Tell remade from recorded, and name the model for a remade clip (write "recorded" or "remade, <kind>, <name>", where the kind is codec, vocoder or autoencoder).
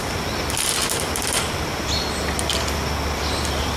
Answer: recorded